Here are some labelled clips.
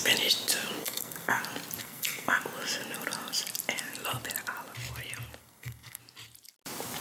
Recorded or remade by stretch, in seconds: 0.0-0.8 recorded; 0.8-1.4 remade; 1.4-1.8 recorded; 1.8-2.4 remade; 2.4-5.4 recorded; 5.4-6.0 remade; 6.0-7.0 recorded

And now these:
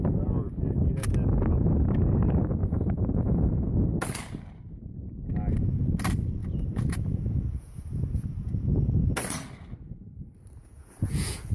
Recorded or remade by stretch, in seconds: 0.0-2.6 recorded; 2.6-3.7 remade; 3.7-6.4 recorded; 6.4-8.7 remade; 8.7-10.6 recorded; 10.6-11.5 remade

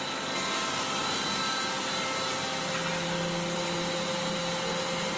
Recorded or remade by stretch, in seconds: 0.0-5.2 recorded

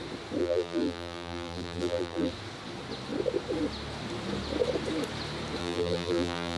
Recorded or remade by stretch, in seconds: 0.0-0.4 recorded; 0.4-2.3 remade; 2.3-5.6 recorded; 5.6-6.6 remade

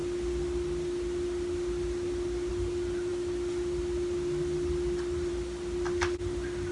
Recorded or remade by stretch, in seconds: 0.0-6.7 recorded